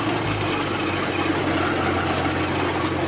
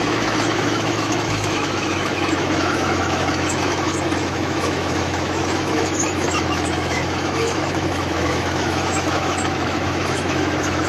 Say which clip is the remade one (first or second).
second